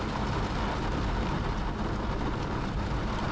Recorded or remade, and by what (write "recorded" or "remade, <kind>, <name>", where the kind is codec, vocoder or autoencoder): recorded